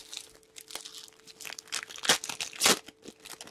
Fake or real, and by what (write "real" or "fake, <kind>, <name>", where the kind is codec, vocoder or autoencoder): real